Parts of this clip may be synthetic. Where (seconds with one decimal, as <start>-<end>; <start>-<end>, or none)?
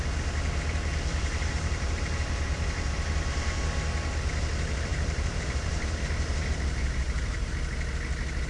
1.1-3.6; 4.9-7.5